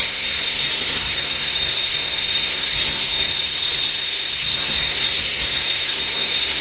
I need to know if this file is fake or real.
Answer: fake